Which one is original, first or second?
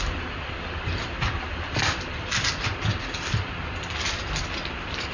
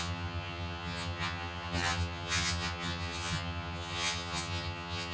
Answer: first